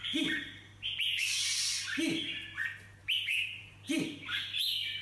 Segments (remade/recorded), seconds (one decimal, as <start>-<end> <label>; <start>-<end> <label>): 0.0-1.1 recorded; 1.1-1.8 remade; 1.8-3.0 recorded; 3.0-3.6 remade; 3.6-5.0 recorded